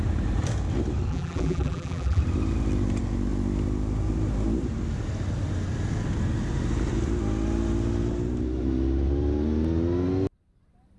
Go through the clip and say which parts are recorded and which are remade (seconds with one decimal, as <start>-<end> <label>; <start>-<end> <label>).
0.0-1.1 recorded; 1.1-2.2 remade; 2.2-11.0 recorded